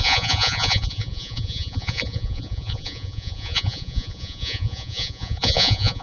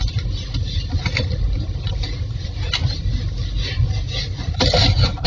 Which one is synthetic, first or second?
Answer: first